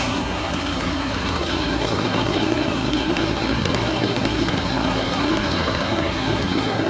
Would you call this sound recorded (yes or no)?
no